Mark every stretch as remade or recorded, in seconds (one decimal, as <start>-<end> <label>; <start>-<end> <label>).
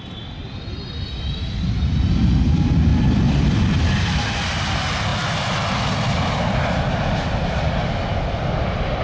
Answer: 0.0-9.0 recorded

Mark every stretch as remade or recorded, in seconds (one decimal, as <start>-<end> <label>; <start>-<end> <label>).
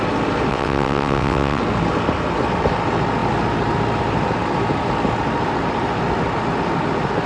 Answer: 0.0-0.5 recorded; 0.5-1.6 remade; 1.6-7.3 recorded